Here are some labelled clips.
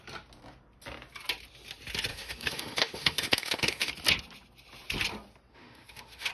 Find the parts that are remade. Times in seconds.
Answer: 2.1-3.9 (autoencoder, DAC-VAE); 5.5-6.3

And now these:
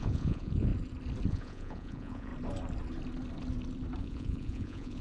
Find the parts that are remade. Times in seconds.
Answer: 0.0-0.7 (vocoder, Vocos); 1.3-2.3; 4.0-5.0

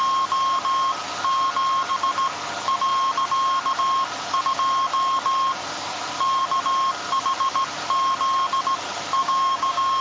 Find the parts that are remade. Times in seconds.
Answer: 9.2-10.0 (codec, DAC)

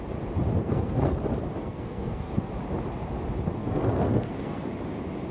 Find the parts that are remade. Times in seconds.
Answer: 0.6-1.2 (codec, SNAC); 1.6-2.5; 3.6-4.7

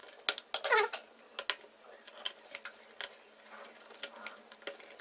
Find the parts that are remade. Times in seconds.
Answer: none